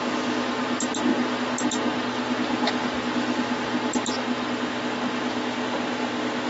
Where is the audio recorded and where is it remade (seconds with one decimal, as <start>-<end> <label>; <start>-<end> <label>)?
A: 0.0-6.5 recorded